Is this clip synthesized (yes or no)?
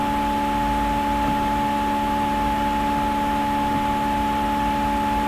no